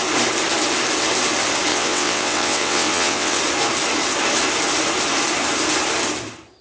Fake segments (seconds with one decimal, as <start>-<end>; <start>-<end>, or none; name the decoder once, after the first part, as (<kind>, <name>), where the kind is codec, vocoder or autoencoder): 1.7-3.4 (vocoder, WaveNeXt)